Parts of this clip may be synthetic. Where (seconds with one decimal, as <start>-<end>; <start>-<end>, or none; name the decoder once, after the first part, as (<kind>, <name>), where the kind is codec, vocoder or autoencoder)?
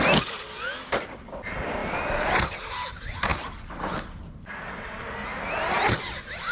none